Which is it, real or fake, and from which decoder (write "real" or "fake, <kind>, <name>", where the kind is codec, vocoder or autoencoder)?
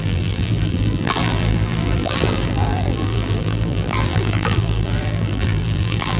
fake, vocoder, BigVGAN v2